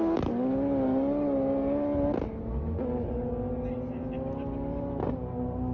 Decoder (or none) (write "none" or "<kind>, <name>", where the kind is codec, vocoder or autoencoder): none